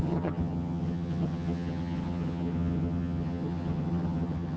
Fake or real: fake